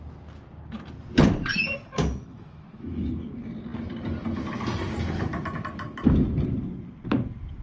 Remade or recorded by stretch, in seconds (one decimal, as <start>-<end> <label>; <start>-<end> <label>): 0.0-1.5 recorded; 1.5-3.1 remade; 3.1-7.6 recorded